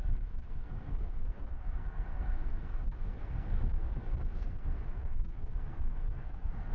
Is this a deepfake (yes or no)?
yes